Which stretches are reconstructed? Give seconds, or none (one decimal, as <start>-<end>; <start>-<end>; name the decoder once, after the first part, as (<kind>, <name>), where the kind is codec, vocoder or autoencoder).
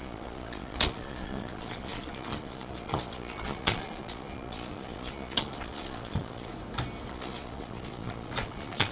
0.0-6.5 (vocoder, Vocos); 7.1-8.9